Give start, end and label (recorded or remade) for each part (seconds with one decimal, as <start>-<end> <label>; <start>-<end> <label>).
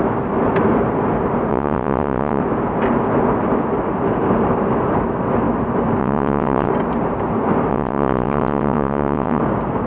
0.0-1.5 recorded; 1.5-2.4 remade; 2.4-6.0 recorded; 6.0-6.7 remade; 6.7-7.7 recorded; 7.7-9.4 remade; 9.4-9.9 recorded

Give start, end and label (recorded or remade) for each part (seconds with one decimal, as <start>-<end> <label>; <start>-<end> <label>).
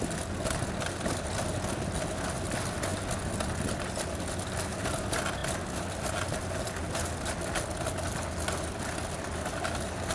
0.0-10.1 recorded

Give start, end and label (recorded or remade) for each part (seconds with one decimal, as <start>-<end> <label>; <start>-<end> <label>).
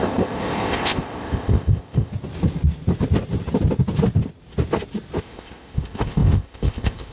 0.0-2.1 remade; 2.1-5.2 recorded; 5.2-7.1 remade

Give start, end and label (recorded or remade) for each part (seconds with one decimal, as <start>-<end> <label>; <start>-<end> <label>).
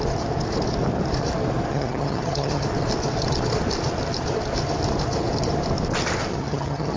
0.0-1.7 recorded; 1.7-2.6 remade; 2.6-6.3 recorded; 6.3-7.0 remade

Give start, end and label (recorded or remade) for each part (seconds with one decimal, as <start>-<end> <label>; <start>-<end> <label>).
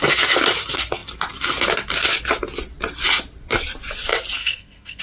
0.0-4.4 recorded; 4.4-5.0 remade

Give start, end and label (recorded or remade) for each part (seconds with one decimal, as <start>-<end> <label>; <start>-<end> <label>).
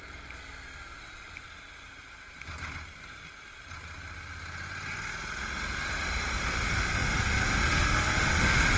0.0-8.8 recorded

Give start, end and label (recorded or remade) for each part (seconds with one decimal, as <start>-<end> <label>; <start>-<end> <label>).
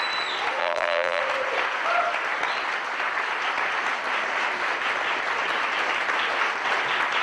0.0-0.6 recorded; 0.6-1.2 remade; 1.2-7.2 recorded